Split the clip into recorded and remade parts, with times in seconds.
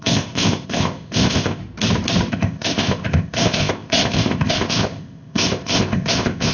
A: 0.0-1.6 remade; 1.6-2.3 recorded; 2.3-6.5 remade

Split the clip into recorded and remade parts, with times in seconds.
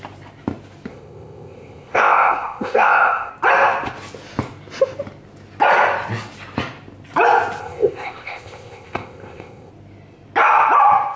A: 0.0-0.9 recorded; 0.9-3.3 remade; 3.3-7.6 recorded; 7.6-9.7 remade; 9.7-11.2 recorded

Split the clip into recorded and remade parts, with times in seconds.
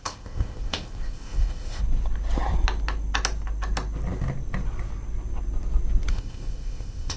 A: 0.0-1.8 remade; 1.8-6.1 recorded; 6.1-7.2 remade